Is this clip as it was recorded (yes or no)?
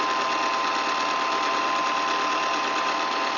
yes